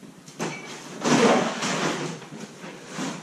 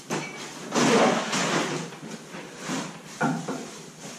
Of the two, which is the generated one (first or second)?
first